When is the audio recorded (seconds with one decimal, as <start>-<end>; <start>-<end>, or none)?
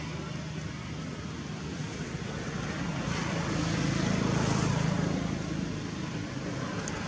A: 0.0-7.1